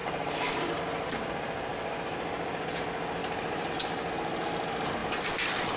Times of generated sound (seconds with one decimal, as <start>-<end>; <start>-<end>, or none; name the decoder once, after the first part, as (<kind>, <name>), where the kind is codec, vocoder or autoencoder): 0.0-0.8 (vocoder, BigVGAN v2); 3.2-3.7; 5.0-5.8

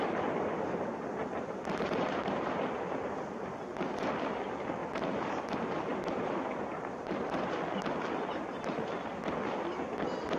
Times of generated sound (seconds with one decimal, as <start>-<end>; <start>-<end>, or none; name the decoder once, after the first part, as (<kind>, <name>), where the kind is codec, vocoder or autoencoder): 1.2-3.5 (vocoder, BigVGAN v2); 4.8-5.3; 5.9-7.6

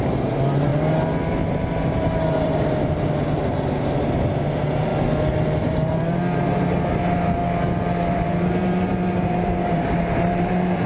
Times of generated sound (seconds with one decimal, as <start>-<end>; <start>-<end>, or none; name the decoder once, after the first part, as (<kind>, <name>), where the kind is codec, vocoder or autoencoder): 0.0-0.7 (vocoder, BigVGAN v2); 1.5-4.9; 5.6-7.4; 8.1-10.9

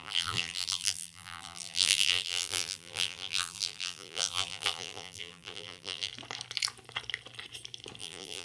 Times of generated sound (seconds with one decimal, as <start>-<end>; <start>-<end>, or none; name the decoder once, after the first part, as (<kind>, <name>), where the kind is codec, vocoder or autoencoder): 0.0-6.1 (vocoder, BigVGAN v2); 8.0-8.4